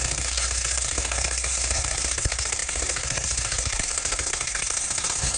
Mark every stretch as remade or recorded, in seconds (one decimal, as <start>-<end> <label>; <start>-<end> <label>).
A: 0.0-5.4 remade